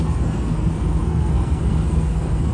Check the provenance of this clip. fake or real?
fake